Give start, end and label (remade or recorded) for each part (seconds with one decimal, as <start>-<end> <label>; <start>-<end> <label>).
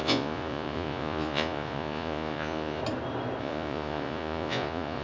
0.0-2.8 remade; 2.8-3.4 recorded; 3.4-5.0 remade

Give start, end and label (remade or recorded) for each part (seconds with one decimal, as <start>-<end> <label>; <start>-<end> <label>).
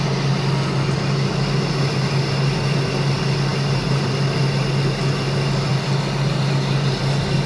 0.0-7.5 recorded